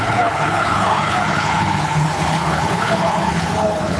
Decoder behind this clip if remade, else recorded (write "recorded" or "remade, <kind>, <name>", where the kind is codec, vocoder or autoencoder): remade, codec, HILCodec